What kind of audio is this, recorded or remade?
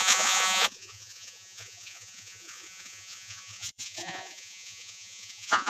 remade